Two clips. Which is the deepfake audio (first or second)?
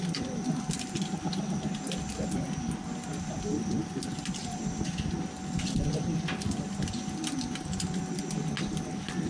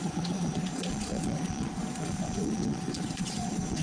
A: second